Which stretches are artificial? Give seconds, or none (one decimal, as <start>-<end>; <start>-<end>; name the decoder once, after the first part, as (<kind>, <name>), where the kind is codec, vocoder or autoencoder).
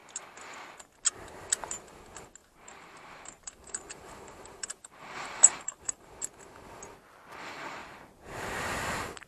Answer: 2.4-6.1 (vocoder, BigVGAN v2); 7.8-9.3